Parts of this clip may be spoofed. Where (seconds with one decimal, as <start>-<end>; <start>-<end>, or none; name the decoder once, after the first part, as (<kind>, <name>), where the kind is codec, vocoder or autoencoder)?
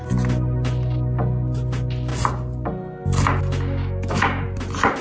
3.8-4.4 (autoencoder, DAC-VAE)